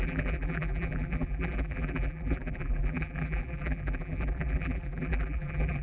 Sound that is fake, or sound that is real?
fake